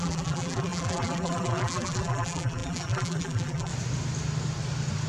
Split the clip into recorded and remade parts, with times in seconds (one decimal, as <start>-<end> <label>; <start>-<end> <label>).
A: 0.0-3.7 remade; 3.7-5.1 recorded